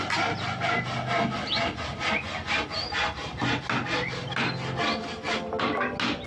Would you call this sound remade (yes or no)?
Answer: no